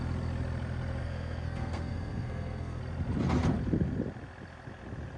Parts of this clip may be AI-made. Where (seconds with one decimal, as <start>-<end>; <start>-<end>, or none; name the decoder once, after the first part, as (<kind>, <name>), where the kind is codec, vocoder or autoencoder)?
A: 1.0-2.8 (codec, SNAC)